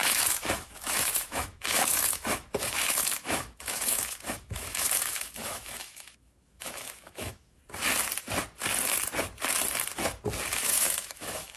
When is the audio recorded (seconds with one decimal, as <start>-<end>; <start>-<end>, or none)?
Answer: 7.6-10.5